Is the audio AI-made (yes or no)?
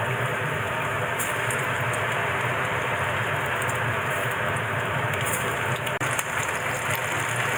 yes